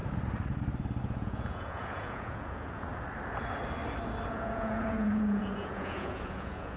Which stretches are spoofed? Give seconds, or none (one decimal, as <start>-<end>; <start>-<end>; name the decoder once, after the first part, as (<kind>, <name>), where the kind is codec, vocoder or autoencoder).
1.0-2.9 (vocoder, Vocos); 4.3-6.8